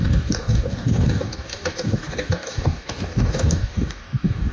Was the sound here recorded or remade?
remade